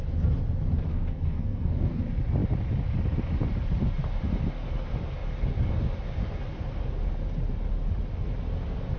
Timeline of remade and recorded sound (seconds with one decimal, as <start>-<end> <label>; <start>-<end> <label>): 0.0-0.9 recorded; 0.9-2.0 remade; 2.0-9.0 recorded